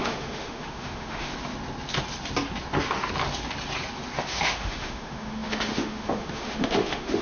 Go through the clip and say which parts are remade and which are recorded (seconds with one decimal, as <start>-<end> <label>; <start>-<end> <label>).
0.0-1.3 remade; 1.3-4.3 recorded; 4.3-7.2 remade

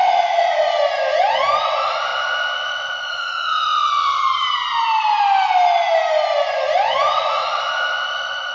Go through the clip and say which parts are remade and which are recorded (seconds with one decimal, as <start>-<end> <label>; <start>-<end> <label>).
0.0-0.8 remade; 0.8-1.6 recorded; 1.6-4.2 remade; 4.2-7.0 recorded; 7.0-8.5 remade